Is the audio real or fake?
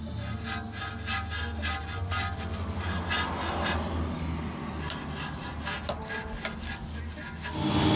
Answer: real